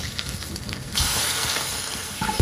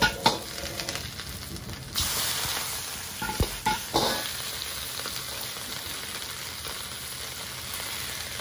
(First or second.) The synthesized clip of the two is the first